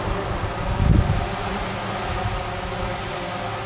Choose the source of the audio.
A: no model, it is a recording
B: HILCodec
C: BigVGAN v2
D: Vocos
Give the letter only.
A